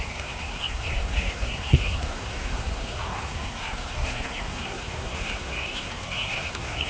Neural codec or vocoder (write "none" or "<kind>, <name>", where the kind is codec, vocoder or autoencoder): codec, SNAC